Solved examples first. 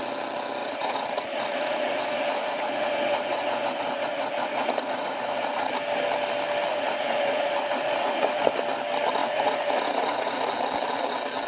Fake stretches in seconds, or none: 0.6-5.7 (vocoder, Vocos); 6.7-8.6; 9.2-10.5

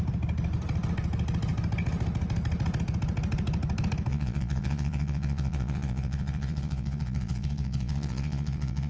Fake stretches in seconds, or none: 4.1-8.9 (vocoder, Vocos)

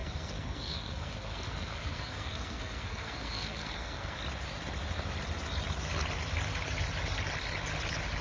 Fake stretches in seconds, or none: 0.0-4.2 (codec, SNAC)

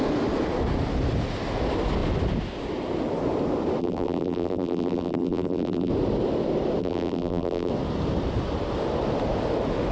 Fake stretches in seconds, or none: 3.8-5.9 (vocoder, BigVGAN v2); 6.8-7.7

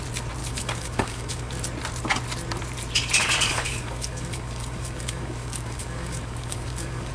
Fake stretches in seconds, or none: 0.4-1.5 (codec, DAC); 3.2-7.1

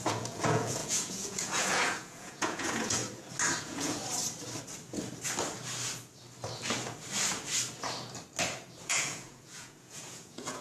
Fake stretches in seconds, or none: 0.0-3.0 (vocoder, Vocos); 3.6-4.0; 8.8-10.6

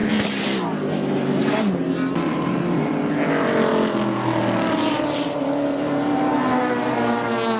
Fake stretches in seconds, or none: none